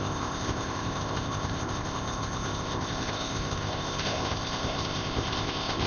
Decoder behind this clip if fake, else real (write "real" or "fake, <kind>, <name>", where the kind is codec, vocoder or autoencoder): fake, codec, ZipCodec